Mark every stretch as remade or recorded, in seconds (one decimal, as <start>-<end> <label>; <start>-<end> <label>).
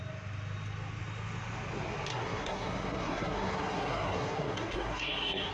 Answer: 0.0-2.1 recorded; 2.1-5.5 remade